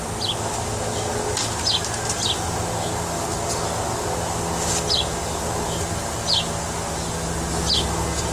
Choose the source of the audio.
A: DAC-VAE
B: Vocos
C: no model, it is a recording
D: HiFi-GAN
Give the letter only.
C